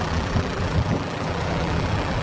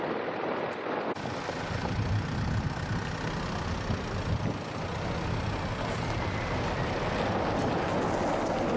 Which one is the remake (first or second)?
first